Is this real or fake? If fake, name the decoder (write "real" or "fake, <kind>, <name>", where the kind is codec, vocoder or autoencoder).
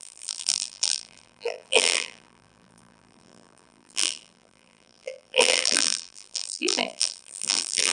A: fake, vocoder, BigVGAN v2